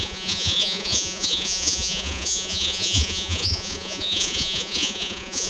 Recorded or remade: remade